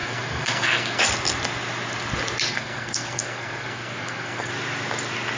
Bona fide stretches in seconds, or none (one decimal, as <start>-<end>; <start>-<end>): 1.0-2.5; 4.5-5.4